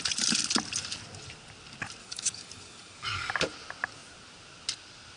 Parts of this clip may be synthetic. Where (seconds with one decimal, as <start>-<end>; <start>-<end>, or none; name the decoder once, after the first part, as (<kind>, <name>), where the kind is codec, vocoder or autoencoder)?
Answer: 2.0-3.3 (codec, DAC)